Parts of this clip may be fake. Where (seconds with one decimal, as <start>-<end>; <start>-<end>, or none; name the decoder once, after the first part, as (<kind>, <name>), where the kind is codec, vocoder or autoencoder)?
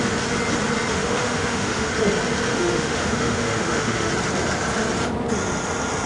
0.9-1.9 (autoencoder, DAC-VAE); 2.5-4.1